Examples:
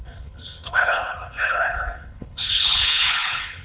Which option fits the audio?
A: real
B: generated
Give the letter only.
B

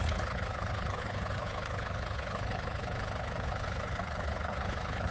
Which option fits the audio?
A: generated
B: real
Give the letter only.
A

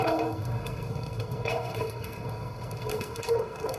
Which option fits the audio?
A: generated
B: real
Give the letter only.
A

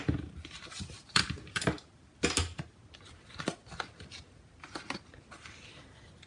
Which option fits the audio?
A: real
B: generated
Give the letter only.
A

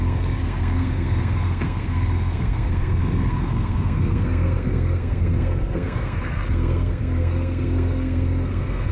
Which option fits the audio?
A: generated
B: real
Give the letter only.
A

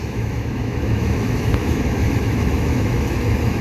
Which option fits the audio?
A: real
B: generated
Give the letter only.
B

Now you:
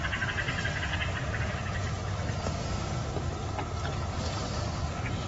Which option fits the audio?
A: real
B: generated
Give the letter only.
A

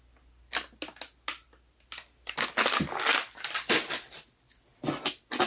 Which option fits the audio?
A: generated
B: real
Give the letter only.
B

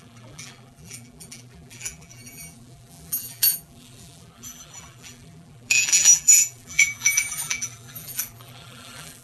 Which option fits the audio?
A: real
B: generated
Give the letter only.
B